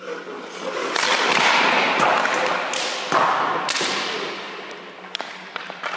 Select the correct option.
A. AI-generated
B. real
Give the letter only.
B